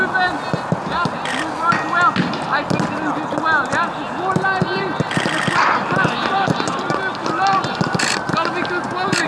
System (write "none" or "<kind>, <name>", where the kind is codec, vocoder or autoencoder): none